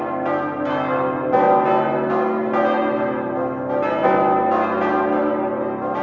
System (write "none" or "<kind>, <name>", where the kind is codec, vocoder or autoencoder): none